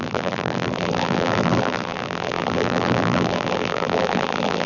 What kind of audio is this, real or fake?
fake